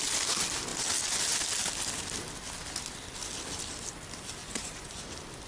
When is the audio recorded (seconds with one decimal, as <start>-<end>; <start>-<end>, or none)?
0.0-4.4; 5.1-5.5